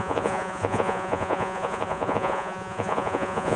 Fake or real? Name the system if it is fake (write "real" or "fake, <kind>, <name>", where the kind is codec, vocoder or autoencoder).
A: fake, vocoder, Vocos